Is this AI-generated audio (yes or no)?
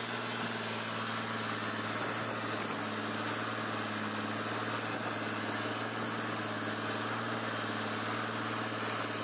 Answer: no